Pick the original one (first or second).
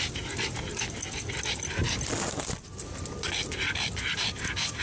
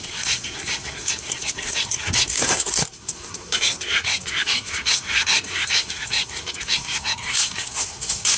first